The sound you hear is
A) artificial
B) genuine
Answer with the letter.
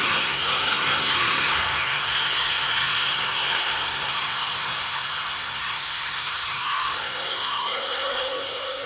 A